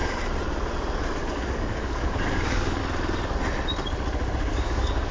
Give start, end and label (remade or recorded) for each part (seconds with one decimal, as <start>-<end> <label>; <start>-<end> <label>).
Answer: 0.0-1.3 recorded; 1.3-2.8 remade; 2.8-4.5 recorded; 4.5-5.1 remade